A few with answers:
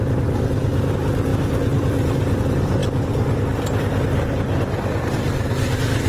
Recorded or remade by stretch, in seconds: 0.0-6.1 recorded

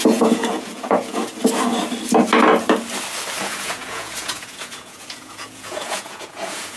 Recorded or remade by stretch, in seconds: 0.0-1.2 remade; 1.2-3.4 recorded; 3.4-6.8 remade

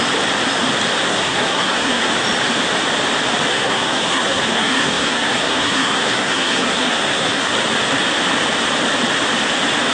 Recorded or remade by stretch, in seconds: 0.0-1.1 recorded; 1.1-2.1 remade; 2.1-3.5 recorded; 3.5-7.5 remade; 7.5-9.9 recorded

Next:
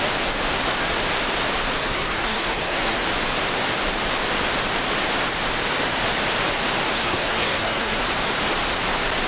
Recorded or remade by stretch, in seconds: 0.0-1.8 recorded; 1.8-3.0 remade; 3.0-6.9 recorded; 6.9-8.1 remade; 8.1-9.3 recorded

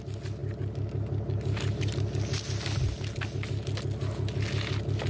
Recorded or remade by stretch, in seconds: 0.0-5.1 recorded

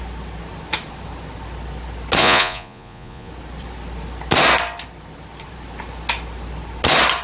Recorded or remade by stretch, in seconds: 0.0-2.2 recorded; 2.2-3.3 remade; 3.3-7.2 recorded

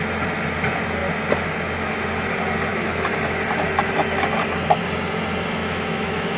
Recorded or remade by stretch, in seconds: 0.0-2.7 recorded; 2.7-3.3 remade; 3.3-5.6 recorded; 5.6-6.4 remade